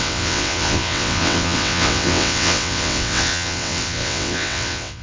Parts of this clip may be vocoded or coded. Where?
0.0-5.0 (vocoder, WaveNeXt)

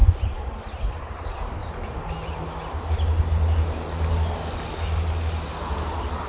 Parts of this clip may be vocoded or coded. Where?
0.0-1.6 (vocoder, BigVGAN v2); 5.4-6.3

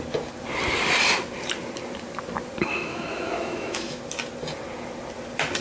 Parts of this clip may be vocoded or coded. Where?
2.6-4.0 (autoencoder, DAC-VAE)

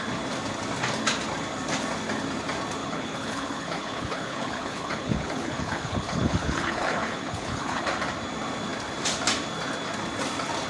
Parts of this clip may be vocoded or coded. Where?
2.8-7.8 (codec, HILCodec)